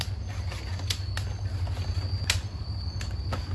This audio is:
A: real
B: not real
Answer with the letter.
A